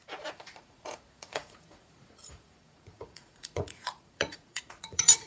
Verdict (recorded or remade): remade